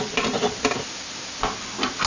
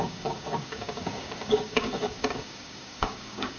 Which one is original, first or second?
first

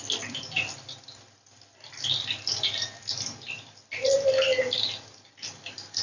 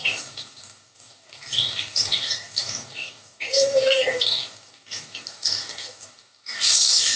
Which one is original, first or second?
first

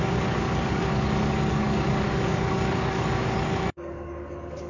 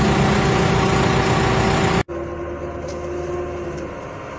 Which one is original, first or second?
second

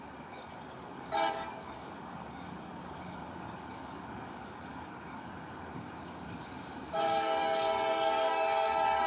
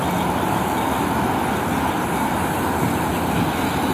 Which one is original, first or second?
second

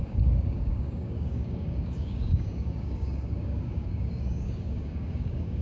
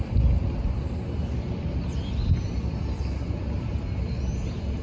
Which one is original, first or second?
second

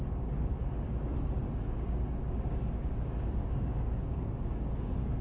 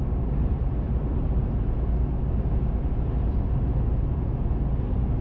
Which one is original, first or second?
second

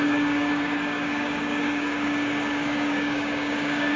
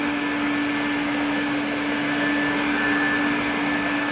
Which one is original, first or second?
second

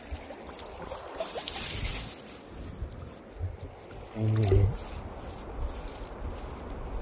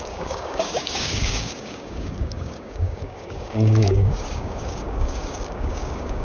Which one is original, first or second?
first